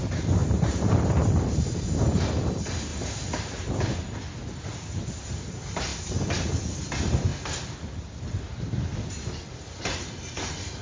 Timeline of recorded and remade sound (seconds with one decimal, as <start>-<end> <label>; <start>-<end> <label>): 0.0-0.4 recorded; 0.4-2.0 remade; 2.0-2.9 recorded; 2.9-3.7 remade; 3.7-10.8 recorded